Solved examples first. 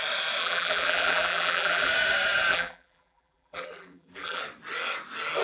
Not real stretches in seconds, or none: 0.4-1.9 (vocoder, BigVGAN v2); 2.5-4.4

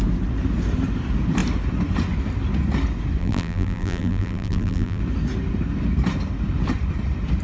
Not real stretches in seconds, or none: 3.2-5.0 (vocoder, BigVGAN v2)

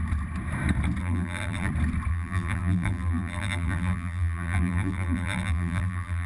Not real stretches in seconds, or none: 1.0-1.7 (vocoder, BigVGAN v2); 2.1-6.3

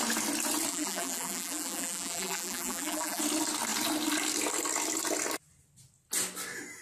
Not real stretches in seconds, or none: 0.7-3.2 (vocoder, BigVGAN v2)

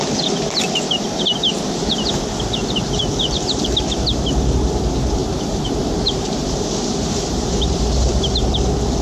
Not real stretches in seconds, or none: 1.4-1.9 (vocoder, BigVGAN v2); 5.2-8.4

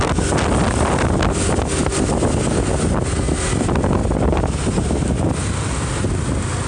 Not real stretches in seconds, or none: none

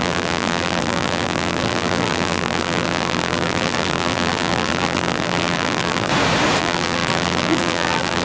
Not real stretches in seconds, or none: 0.0-6.1 (vocoder, BigVGAN v2); 6.6-8.2